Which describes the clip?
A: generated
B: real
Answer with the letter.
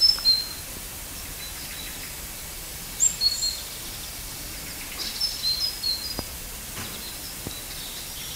B